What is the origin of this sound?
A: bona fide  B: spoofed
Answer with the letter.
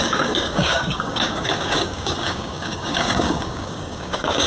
B